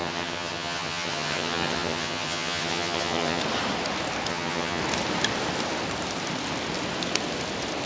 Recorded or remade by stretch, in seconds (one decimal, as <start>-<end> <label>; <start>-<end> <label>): 0.0-3.4 remade; 3.4-4.3 recorded; 4.3-4.8 remade; 4.8-7.9 recorded

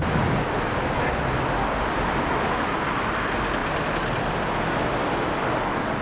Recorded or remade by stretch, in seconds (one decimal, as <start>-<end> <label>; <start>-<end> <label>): 0.0-6.0 recorded